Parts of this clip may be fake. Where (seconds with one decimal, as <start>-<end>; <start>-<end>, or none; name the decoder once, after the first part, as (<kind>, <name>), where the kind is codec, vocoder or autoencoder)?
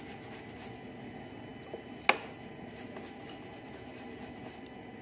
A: none